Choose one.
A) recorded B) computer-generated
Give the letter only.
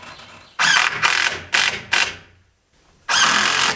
A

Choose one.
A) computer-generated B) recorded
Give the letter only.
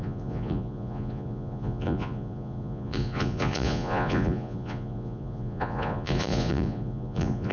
A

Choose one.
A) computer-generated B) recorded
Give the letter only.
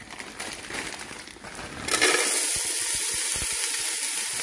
B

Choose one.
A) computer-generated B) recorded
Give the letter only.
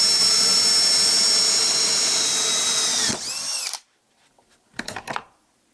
A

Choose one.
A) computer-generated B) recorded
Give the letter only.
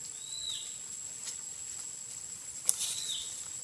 B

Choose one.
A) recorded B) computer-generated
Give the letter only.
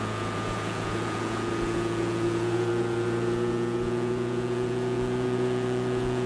B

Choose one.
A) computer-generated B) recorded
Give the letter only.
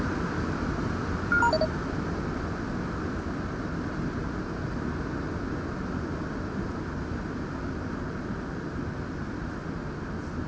B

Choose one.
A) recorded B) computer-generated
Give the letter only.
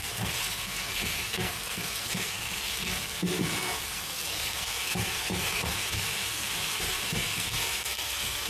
B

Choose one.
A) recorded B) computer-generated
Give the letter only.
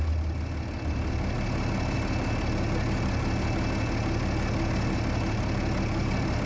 A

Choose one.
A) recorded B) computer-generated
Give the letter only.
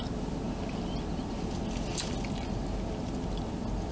A